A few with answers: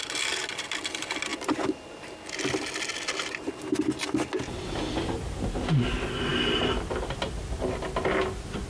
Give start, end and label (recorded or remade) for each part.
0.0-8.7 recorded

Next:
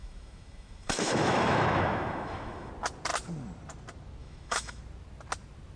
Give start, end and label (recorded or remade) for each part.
0.0-2.7 remade; 2.7-4.2 recorded; 4.2-4.8 remade; 4.8-5.8 recorded

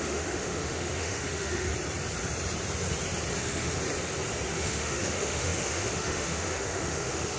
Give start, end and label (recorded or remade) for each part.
0.0-1.7 remade; 1.7-3.4 recorded; 3.4-3.8 remade; 3.8-4.5 recorded; 4.5-7.4 remade

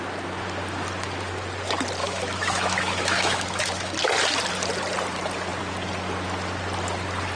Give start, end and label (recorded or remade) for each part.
0.0-2.0 recorded; 2.0-3.9 remade; 3.9-7.4 recorded